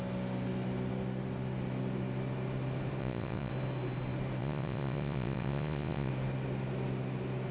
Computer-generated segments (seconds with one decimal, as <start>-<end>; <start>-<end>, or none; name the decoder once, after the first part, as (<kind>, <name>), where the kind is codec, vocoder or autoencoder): 3.0-3.5 (vocoder, Vocos); 4.4-6.1